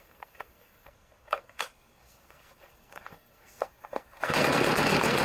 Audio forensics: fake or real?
fake